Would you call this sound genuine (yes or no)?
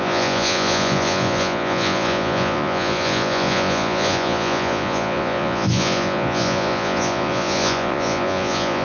no